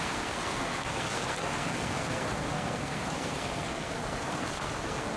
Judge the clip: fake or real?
fake